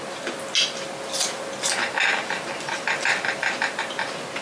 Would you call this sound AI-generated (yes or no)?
no